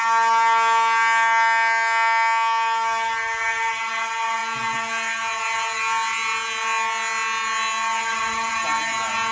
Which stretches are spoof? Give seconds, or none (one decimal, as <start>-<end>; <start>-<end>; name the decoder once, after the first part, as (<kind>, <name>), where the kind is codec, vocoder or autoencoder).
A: none